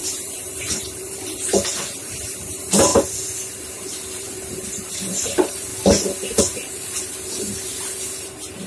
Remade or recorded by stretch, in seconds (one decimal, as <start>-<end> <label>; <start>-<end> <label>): 0.0-2.9 remade; 2.9-3.6 recorded; 3.6-5.7 remade; 5.7-6.4 recorded; 6.4-8.7 remade